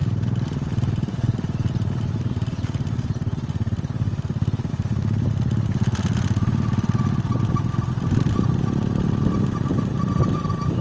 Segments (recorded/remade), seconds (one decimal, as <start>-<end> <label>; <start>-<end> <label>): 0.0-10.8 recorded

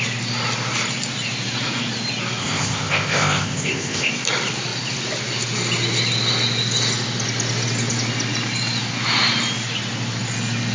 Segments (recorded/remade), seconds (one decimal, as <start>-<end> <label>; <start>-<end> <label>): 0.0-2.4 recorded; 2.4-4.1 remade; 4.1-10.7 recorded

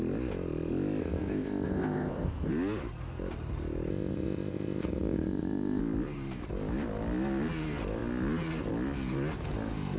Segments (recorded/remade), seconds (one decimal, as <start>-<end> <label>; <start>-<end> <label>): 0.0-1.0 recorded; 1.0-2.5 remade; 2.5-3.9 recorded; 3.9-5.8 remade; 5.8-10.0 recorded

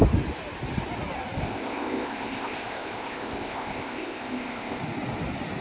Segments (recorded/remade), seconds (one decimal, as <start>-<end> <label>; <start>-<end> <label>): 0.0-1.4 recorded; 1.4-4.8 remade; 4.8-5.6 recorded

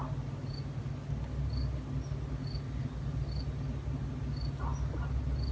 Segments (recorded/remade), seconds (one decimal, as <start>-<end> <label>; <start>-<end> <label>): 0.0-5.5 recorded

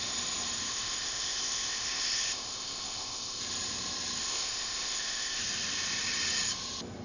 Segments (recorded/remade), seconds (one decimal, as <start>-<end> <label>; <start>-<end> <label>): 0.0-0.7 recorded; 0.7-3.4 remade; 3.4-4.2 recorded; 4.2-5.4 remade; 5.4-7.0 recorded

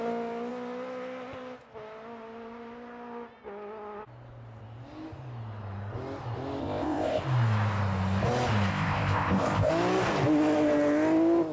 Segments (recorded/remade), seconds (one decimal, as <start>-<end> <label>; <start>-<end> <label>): 0.0-6.6 recorded; 6.6-7.2 remade; 7.2-8.7 recorded; 8.7-9.7 remade; 9.7-11.5 recorded

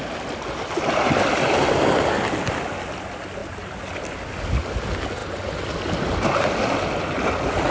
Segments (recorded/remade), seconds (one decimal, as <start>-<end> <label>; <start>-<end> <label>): 0.0-7.7 recorded